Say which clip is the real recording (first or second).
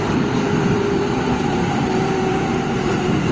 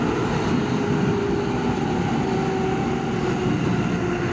second